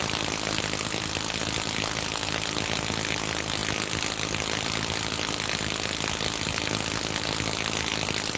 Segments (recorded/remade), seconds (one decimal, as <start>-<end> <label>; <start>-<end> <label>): 0.0-8.4 recorded